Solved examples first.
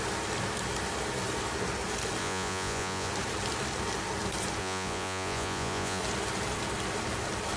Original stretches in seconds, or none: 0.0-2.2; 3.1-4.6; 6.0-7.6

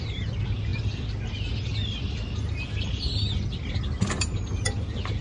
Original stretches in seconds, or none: 0.0-5.2

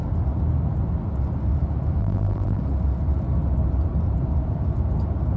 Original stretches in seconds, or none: 0.0-2.0; 2.6-5.4

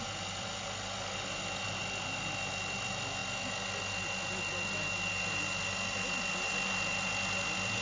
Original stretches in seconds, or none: 0.0-7.8

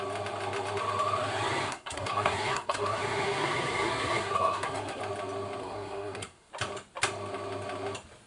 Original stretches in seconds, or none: 0.0-1.6; 5.0-5.6; 6.5-8.3

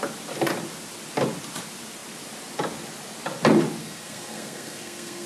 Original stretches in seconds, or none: 0.0-3.8

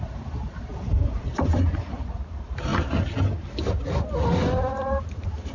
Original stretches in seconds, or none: 2.7-4.7